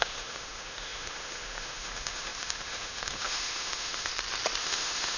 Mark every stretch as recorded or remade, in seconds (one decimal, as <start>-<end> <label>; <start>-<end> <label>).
0.0-4.1 remade; 4.1-4.6 recorded; 4.6-5.2 remade